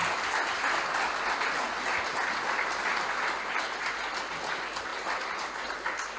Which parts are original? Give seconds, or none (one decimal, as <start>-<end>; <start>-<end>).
0.0-6.2